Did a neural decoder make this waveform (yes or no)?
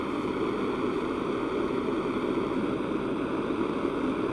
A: yes